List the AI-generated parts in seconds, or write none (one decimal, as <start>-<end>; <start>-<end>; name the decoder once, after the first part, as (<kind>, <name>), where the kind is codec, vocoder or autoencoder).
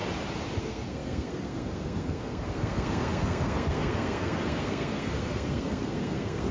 0.6-6.5 (codec, SNAC)